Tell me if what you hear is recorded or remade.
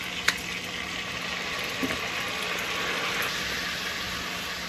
recorded